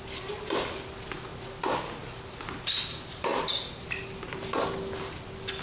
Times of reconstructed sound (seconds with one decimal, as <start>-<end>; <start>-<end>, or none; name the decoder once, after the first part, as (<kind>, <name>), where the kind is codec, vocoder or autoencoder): none